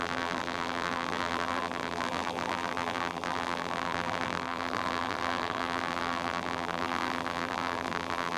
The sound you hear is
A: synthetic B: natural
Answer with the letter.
A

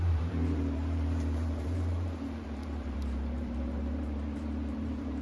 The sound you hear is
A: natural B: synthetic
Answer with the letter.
B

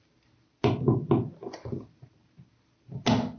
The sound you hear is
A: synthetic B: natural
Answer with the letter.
B